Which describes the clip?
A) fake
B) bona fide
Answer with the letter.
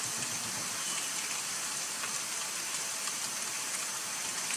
B